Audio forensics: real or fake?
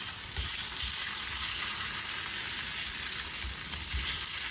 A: real